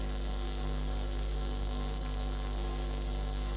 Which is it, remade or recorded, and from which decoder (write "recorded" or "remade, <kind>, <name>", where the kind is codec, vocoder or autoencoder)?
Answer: remade, codec, SNAC